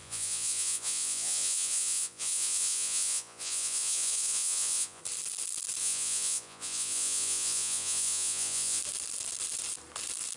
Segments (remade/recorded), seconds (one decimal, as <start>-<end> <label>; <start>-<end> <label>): 0.0-5.0 remade; 5.0-5.8 recorded; 5.8-8.8 remade; 8.8-10.4 recorded